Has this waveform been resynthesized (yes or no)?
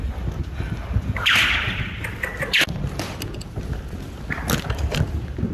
no